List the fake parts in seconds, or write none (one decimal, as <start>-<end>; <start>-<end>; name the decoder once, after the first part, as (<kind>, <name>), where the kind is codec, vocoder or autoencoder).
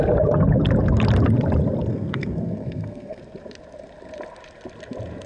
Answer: 1.9-3.2 (codec, SNAC)